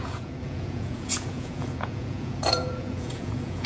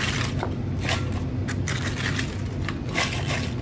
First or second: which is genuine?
second